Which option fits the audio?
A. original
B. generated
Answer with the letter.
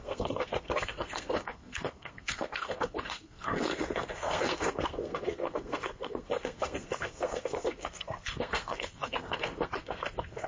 B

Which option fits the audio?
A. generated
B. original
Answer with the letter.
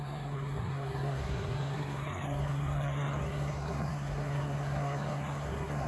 A